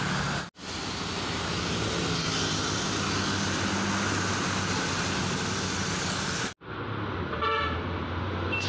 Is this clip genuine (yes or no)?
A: yes